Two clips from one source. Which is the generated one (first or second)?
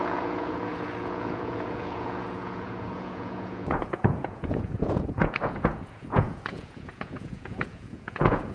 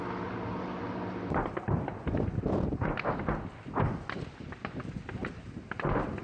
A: first